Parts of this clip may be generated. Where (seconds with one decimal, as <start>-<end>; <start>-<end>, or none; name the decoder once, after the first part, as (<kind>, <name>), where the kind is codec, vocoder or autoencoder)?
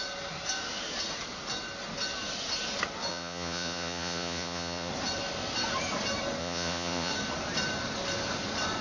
3.1-4.9 (vocoder, Vocos); 6.4-7.1